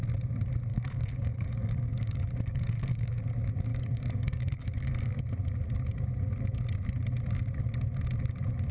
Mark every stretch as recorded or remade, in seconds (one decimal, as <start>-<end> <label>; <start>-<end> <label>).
0.0-0.7 recorded; 0.7-3.3 remade; 3.3-3.7 recorded; 3.7-5.2 remade; 5.2-8.7 recorded